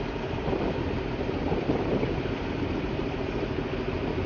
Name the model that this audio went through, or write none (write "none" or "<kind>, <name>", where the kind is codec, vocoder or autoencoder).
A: none